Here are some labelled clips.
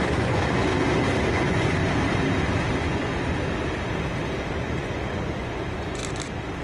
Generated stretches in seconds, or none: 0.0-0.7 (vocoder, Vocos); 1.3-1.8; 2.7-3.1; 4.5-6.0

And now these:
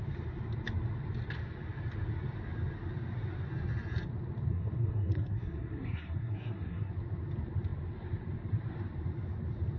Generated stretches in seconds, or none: 4.5-6.9 (codec, SNAC)

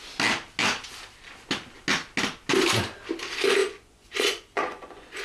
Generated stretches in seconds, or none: 3.6-5.2 (vocoder, Vocos)

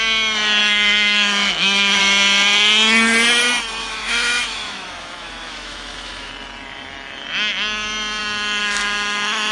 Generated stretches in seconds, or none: 0.6-2.0 (autoencoder, DAC-VAE); 3.8-6.3; 8.6-9.5

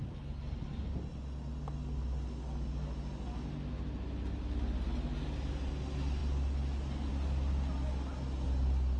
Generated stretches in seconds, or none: none

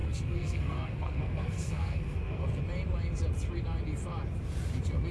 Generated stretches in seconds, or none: 0.0-2.6 (codec, SNAC)

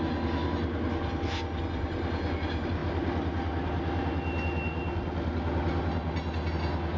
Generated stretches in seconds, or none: none